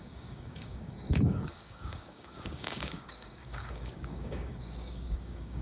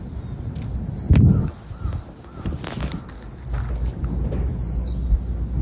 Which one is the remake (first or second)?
first